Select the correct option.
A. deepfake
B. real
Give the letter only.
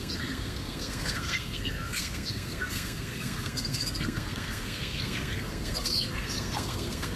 A